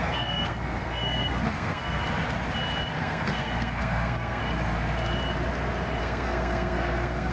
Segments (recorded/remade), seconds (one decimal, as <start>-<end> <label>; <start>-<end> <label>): 0.0-2.0 remade; 2.0-3.0 recorded; 3.0-4.4 remade; 4.4-6.0 recorded; 6.0-7.3 remade

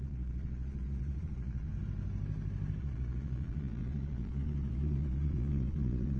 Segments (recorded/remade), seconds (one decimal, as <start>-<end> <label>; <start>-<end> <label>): 0.0-1.7 remade; 1.7-2.8 recorded; 2.8-6.2 remade

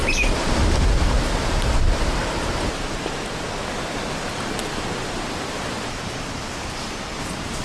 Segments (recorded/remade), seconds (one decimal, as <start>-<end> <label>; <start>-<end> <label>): 0.0-7.6 recorded

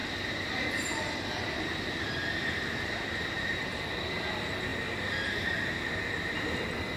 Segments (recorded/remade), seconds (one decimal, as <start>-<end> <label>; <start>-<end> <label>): 0.0-3.9 remade; 3.9-4.7 recorded; 4.7-5.7 remade; 5.7-7.0 recorded

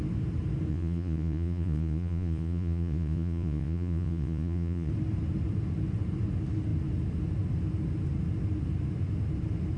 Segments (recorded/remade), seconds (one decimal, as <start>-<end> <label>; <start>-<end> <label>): 0.0-0.7 recorded; 0.7-4.9 remade; 4.9-9.8 recorded